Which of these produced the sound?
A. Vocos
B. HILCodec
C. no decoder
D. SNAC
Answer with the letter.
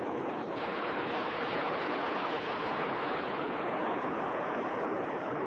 B